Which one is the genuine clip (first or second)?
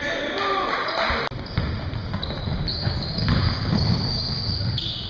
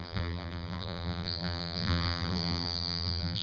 first